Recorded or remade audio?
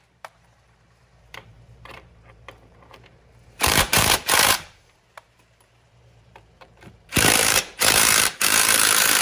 remade